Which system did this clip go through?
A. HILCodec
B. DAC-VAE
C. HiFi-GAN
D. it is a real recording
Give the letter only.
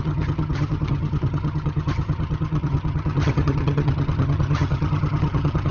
C